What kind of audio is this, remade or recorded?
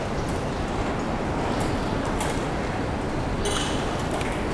recorded